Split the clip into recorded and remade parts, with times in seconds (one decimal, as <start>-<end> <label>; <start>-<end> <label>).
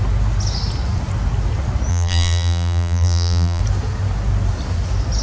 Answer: 0.0-1.9 recorded; 1.9-3.6 remade; 3.6-5.2 recorded